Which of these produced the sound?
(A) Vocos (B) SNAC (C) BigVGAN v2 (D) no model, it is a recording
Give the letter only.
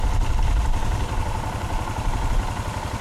D